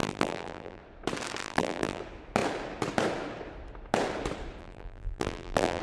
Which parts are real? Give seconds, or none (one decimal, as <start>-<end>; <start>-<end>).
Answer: 0.8-1.4; 2.0-4.6

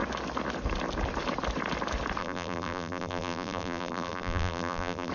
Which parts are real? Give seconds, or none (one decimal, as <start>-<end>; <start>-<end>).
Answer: 0.0-2.2

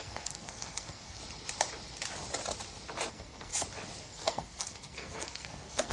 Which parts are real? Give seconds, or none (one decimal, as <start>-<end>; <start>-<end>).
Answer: 1.2-3.1; 3.5-4.0